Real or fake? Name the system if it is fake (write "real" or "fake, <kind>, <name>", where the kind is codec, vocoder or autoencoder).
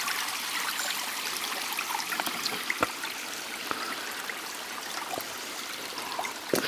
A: real